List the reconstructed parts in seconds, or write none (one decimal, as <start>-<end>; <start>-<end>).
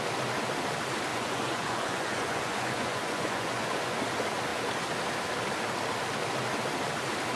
1.1-4.0